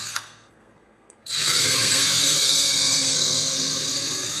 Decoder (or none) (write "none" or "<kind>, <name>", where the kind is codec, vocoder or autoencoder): codec, SNAC